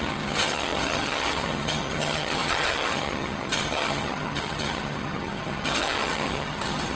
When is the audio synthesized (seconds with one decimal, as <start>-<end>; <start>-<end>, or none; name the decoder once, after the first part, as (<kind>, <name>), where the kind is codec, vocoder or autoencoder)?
0.0-7.0 (vocoder, HiFi-GAN)